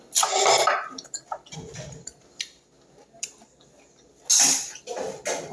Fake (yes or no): no